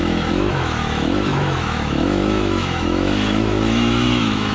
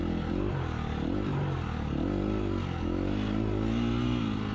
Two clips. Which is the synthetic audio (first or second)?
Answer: first